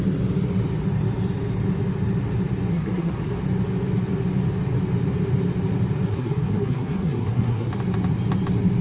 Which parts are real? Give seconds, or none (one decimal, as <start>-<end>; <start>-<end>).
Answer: 0.0-2.7; 3.4-6.1; 7.7-8.8